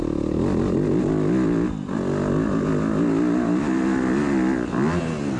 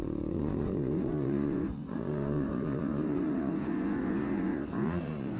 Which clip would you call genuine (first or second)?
first